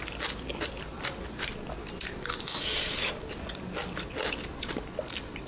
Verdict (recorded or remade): recorded